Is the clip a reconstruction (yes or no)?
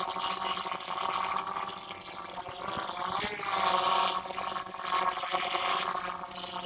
no